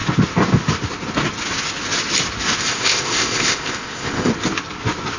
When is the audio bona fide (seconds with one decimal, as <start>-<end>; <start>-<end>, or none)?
0.0-2.6; 4.3-5.2